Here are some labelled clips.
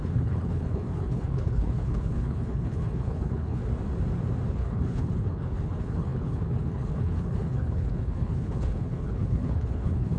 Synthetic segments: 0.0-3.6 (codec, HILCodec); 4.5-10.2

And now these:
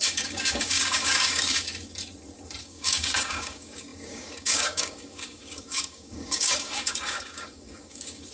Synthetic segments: 0.0-1.7 (codec, DAC); 2.6-8.3

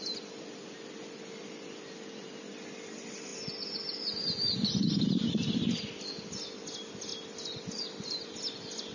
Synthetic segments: none

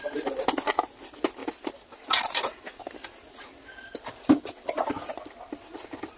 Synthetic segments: 1.4-5.1 (vocoder, BigVGAN v2)

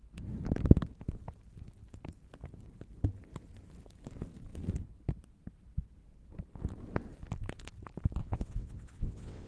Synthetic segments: 8.2-9.5 (vocoder, WaveNeXt)